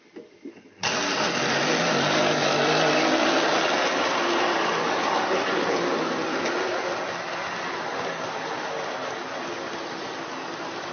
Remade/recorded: recorded